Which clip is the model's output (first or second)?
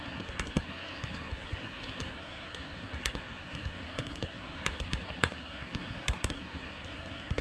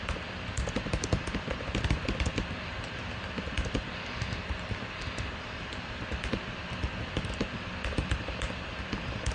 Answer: first